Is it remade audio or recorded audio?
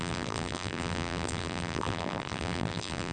remade